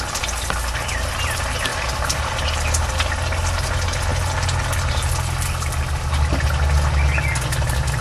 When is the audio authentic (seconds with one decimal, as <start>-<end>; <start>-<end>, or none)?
0.0-8.0